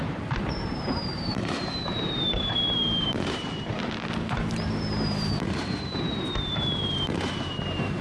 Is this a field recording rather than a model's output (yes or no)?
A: no